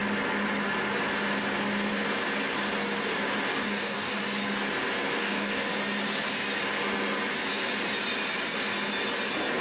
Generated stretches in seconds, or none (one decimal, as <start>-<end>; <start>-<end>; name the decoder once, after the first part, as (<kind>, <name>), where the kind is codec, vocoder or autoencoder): 3.5-4.2 (codec, DAC); 5.2-5.7

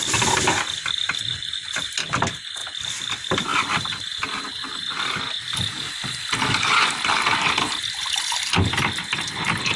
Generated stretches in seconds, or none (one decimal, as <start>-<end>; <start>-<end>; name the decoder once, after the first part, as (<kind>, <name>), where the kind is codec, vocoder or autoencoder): none